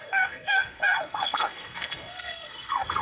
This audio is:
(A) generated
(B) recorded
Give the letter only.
A